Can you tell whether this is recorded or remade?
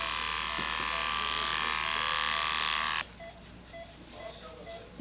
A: recorded